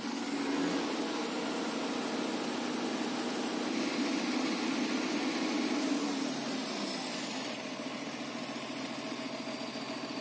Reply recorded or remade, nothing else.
recorded